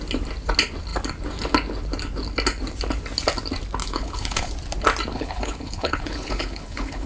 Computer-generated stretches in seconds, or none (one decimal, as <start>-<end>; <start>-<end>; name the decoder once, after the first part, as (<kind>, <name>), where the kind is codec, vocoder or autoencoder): 3.8-4.5 (codec, HILCodec); 5.1-7.1